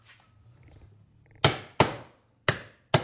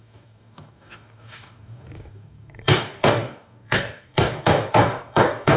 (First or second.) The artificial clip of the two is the second